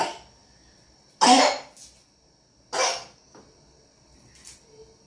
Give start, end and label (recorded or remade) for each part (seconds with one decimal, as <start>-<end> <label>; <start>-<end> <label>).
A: 0.0-2.8 recorded; 2.8-3.4 remade; 3.4-5.1 recorded